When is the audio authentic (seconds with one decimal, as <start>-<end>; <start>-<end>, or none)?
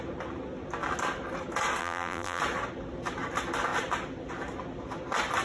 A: 0.0-1.8; 2.4-5.4